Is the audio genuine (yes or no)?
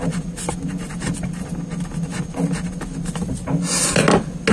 yes